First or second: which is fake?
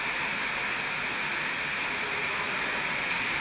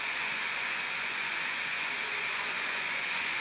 second